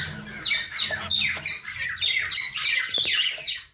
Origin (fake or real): real